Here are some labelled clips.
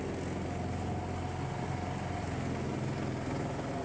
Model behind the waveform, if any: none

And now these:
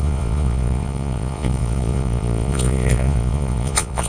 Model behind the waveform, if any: vocoder, Vocos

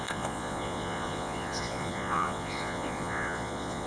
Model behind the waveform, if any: vocoder, Vocos